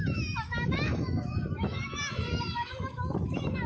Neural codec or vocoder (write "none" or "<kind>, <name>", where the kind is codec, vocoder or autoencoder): autoencoder, DAC-VAE